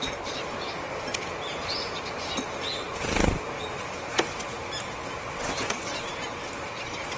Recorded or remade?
recorded